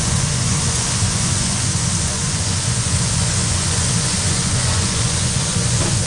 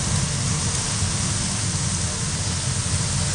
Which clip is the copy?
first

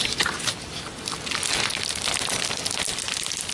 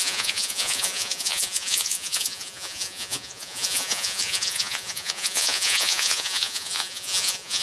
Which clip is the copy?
second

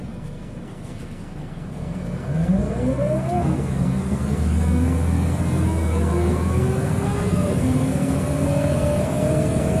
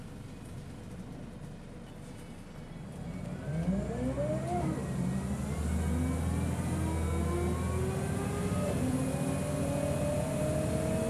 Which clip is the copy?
first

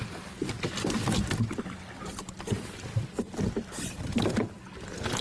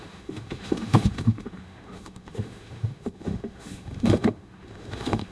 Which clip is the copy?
second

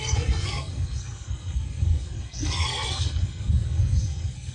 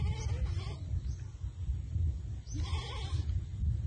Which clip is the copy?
first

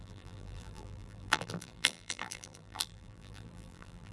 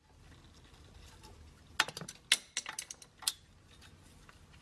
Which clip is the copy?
first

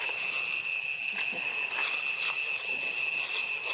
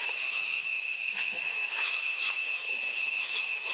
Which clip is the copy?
second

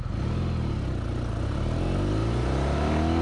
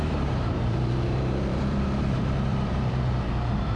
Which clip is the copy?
second